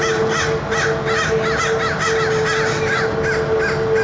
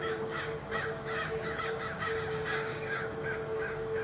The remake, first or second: second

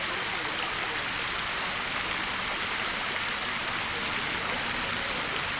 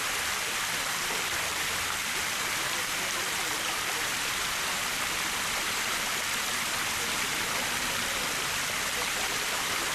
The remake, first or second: second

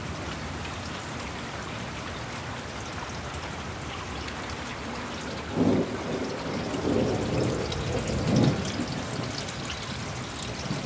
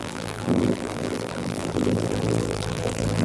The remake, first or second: second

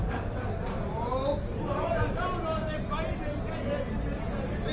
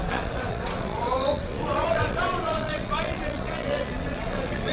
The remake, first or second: second